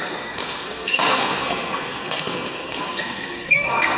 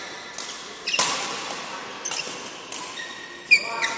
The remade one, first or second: first